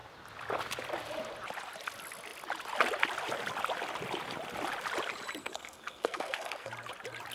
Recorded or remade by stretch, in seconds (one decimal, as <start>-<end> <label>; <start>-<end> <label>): 0.0-5.4 recorded; 5.4-6.7 remade; 6.7-7.3 recorded